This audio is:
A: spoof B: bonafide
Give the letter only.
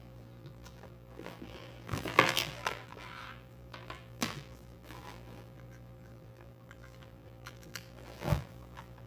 A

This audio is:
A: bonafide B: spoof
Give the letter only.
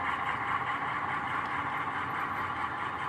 A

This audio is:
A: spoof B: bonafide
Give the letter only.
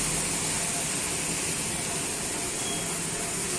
B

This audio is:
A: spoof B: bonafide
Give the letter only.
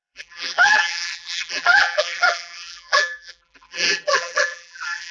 A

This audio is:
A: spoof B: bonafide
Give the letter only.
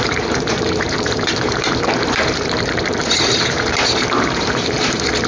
A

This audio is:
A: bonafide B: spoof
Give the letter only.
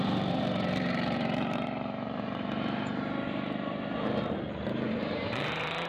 B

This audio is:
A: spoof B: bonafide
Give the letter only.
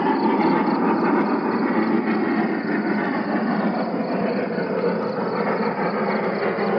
B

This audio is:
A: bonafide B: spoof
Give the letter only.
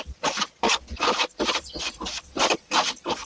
A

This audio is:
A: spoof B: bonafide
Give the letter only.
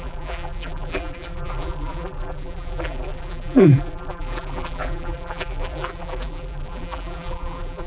A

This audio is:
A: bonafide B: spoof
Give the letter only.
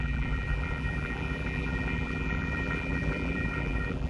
B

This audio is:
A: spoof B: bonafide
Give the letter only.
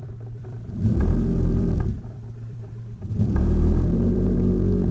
A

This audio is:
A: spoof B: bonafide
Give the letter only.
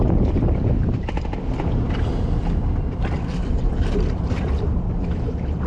A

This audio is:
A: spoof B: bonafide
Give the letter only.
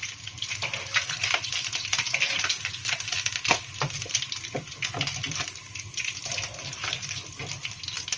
B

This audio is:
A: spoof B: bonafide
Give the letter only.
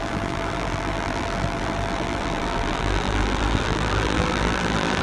A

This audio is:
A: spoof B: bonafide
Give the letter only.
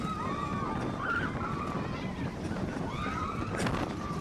B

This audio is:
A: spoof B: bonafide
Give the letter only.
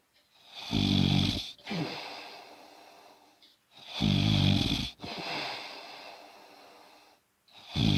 B